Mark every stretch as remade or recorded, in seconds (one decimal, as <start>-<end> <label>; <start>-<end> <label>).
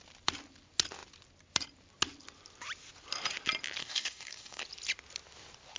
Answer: 0.0-3.8 recorded; 3.8-4.6 remade; 4.6-5.8 recorded